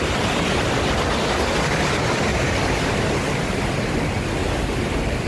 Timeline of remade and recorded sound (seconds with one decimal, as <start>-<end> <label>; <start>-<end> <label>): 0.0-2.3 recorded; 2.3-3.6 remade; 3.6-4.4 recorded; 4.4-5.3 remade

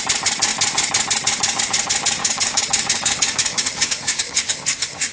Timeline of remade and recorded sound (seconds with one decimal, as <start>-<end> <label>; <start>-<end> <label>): 0.0-2.2 recorded; 2.2-5.1 remade

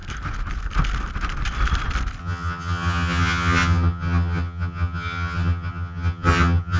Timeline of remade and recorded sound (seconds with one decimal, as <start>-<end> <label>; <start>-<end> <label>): 0.0-2.2 recorded; 2.2-6.8 remade

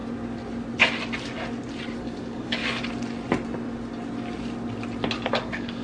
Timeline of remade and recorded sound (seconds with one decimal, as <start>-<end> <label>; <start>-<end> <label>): 0.0-2.0 recorded; 2.0-2.6 remade; 2.6-5.3 recorded; 5.3-5.8 remade

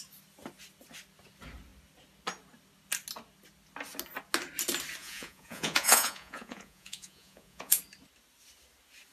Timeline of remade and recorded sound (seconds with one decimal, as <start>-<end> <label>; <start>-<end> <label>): 0.0-5.0 recorded; 5.0-7.8 remade; 7.8-9.1 recorded

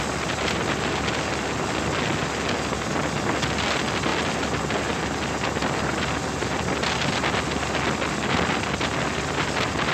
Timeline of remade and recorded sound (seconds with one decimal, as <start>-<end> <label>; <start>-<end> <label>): 0.0-9.9 recorded